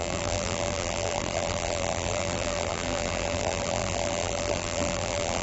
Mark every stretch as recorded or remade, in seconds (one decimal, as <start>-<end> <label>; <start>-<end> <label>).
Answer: 0.0-5.4 remade